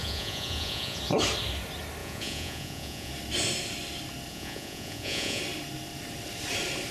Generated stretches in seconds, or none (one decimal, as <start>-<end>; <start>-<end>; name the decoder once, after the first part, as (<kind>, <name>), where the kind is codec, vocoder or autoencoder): 0.0-1.0 (vocoder, Vocos); 2.0-3.1; 4.3-5.4